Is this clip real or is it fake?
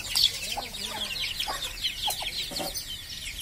real